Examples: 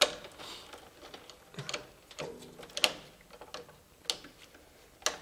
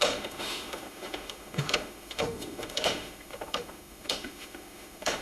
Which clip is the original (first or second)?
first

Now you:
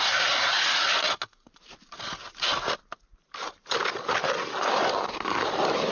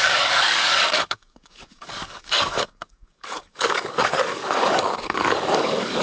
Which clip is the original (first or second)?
first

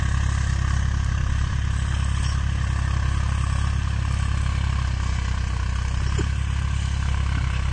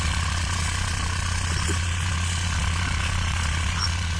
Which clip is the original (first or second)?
first